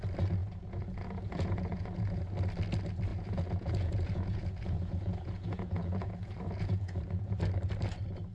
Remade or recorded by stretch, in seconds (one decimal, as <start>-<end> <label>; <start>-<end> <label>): 0.0-0.4 recorded; 0.4-2.2 remade; 2.2-3.1 recorded; 3.1-7.4 remade; 7.4-8.3 recorded